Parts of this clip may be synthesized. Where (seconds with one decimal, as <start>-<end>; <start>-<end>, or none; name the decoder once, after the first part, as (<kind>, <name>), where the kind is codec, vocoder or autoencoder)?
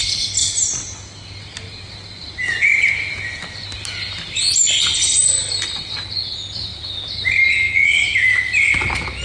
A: none